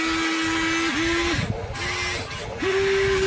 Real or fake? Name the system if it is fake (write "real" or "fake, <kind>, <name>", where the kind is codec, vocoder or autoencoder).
real